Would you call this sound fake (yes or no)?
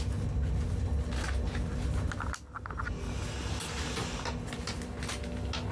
no